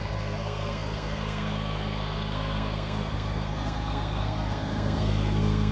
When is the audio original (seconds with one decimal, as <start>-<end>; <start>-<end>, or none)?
none